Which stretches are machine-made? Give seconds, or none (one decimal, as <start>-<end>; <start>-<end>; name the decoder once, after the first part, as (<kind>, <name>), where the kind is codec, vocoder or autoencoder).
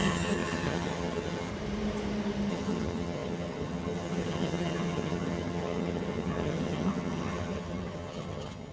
0.0-1.5 (vocoder, HiFi-GAN); 2.5-8.7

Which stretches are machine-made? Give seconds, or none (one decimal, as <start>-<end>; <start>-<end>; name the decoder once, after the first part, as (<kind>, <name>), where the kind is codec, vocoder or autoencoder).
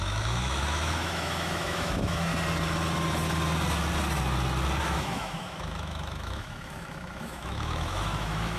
0.0-2.3 (autoencoder, DAC-VAE); 4.8-8.6